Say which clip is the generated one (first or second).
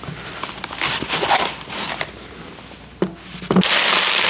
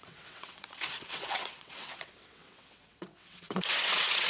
second